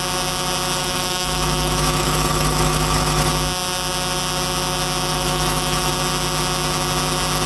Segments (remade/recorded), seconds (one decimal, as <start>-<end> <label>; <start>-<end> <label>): 0.0-0.8 recorded; 0.8-3.3 remade; 3.3-5.1 recorded; 5.1-5.9 remade; 5.9-7.5 recorded